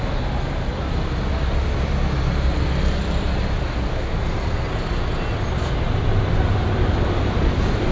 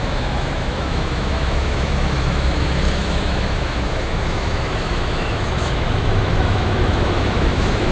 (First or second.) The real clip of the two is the first